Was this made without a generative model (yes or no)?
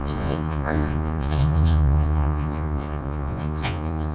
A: no